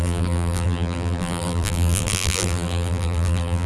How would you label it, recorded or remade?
remade